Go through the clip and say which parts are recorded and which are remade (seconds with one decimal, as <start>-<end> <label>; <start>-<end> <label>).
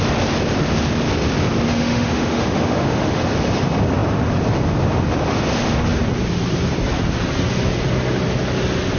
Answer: 0.0-1.7 recorded; 1.7-3.2 remade; 3.2-9.0 recorded